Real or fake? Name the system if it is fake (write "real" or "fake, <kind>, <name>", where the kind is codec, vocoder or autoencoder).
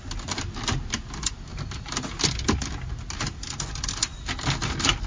real